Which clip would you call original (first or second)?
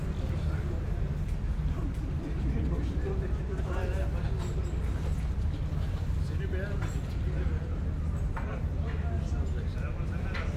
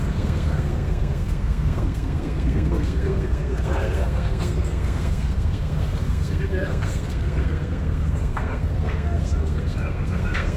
first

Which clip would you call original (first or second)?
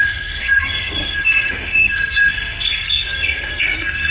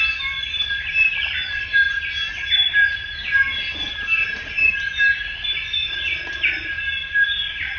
second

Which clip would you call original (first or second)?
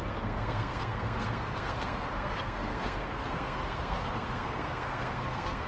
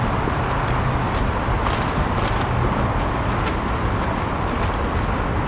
second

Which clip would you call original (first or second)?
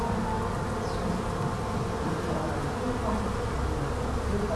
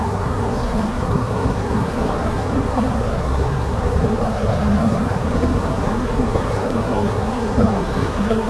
first